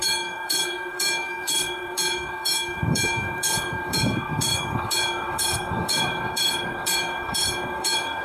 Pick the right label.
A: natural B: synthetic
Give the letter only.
B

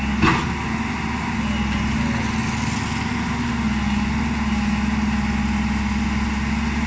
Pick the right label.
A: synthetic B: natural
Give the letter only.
B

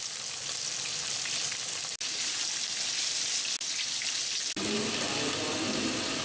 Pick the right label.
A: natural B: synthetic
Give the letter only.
A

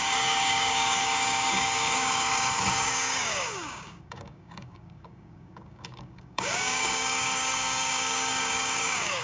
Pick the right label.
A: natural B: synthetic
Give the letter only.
B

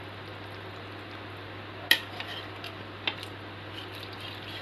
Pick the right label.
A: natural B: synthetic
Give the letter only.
A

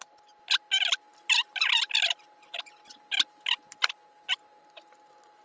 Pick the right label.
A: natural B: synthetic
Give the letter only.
A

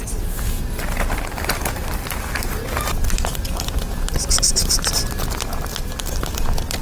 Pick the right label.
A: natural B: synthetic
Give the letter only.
A